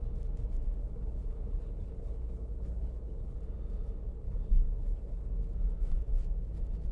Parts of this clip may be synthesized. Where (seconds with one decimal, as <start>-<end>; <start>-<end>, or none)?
0.8-3.4; 4.1-5.3